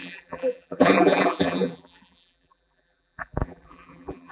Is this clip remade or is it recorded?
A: remade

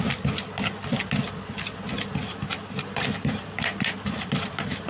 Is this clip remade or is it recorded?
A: recorded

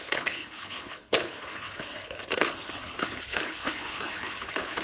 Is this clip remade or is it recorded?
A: remade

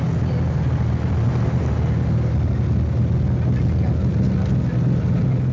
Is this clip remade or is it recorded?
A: recorded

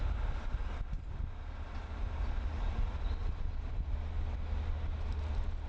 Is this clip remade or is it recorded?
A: recorded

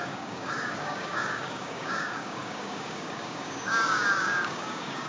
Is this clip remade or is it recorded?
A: remade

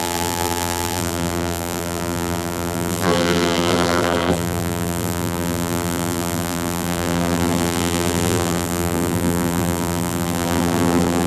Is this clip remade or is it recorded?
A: remade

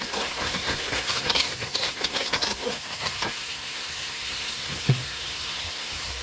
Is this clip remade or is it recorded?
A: remade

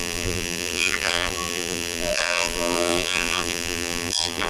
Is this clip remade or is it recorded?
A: remade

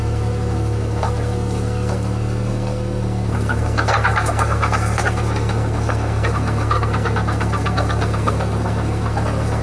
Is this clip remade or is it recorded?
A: remade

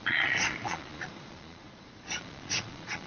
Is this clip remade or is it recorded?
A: remade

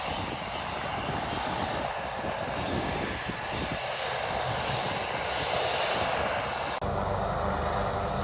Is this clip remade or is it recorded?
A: recorded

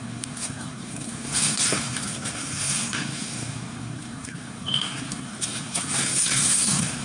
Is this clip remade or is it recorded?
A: remade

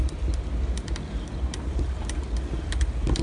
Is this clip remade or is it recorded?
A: recorded